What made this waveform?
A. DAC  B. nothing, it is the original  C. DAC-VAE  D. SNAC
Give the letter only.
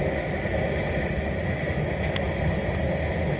B